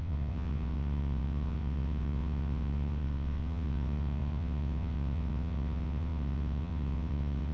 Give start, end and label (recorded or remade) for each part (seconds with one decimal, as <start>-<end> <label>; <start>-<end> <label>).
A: 0.0-7.5 remade